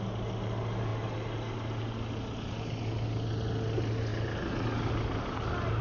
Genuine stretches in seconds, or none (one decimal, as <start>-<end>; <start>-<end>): 0.0-5.8